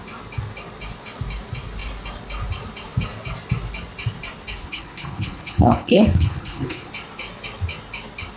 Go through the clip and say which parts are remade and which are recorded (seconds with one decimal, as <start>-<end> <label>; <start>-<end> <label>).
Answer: 0.0-4.6 recorded; 4.6-6.9 remade; 6.9-8.4 recorded